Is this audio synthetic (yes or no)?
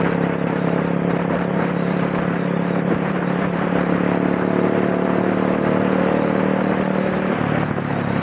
yes